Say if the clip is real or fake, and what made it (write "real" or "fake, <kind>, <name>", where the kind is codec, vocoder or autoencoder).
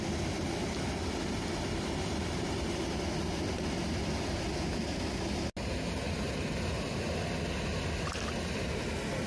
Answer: real